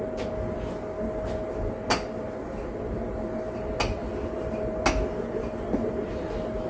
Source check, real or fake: real